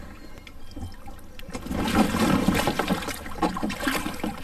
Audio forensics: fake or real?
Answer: real